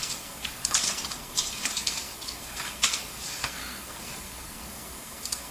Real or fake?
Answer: fake